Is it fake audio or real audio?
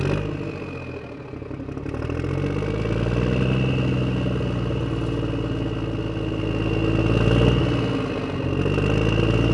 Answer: real